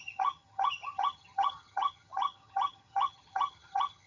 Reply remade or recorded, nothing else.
remade